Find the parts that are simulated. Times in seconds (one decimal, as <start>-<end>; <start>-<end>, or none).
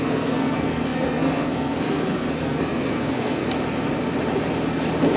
0.0-3.4